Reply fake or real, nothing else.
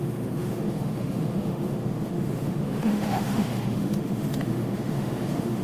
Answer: fake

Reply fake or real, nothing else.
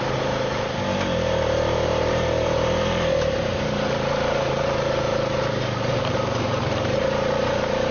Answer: fake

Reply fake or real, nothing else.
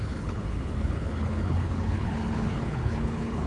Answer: fake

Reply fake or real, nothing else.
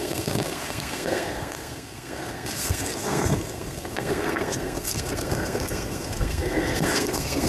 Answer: fake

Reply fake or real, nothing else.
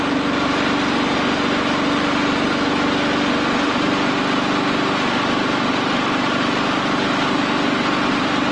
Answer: real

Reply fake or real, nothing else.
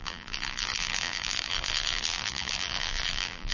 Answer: fake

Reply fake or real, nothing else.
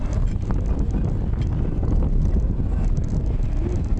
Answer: real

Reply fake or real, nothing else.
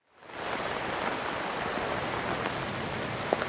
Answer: real